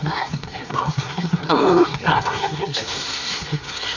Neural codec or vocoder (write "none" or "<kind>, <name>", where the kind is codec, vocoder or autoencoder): codec, SNAC